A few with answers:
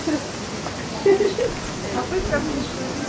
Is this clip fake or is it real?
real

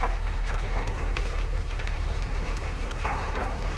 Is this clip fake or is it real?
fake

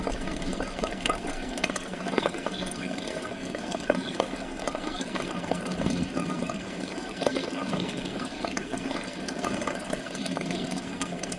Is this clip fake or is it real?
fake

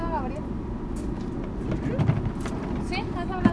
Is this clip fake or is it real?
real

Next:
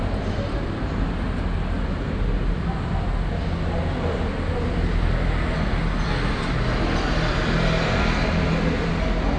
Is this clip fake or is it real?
real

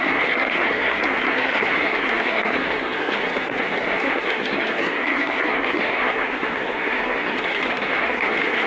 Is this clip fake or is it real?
fake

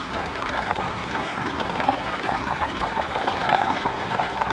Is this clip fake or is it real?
fake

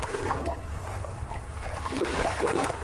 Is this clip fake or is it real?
fake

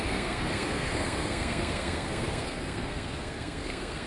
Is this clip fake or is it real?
fake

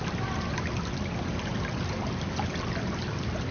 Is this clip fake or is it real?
real